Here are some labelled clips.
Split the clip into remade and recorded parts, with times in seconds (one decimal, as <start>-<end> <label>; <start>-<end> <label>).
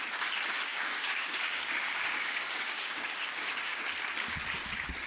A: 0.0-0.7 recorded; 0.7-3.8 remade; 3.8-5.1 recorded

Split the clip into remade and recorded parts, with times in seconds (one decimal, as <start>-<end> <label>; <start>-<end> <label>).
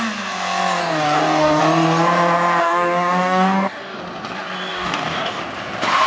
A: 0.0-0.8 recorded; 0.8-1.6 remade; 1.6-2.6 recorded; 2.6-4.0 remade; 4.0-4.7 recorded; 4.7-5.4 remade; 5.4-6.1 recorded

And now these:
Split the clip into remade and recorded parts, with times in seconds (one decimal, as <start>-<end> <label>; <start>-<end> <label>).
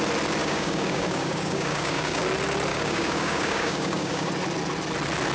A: 0.0-0.4 recorded; 0.4-2.2 remade; 2.2-2.7 recorded; 2.7-4.3 remade; 4.3-5.3 recorded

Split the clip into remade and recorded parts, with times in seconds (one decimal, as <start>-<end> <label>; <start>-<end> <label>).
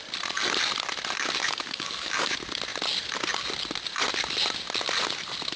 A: 0.0-1.4 recorded; 1.4-2.3 remade; 2.3-5.6 recorded